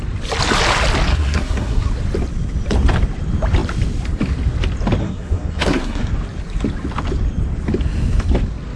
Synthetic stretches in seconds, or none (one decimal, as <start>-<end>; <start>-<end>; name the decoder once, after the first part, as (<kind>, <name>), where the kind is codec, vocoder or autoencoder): 1.1-1.9 (codec, SNAC); 5.0-6.1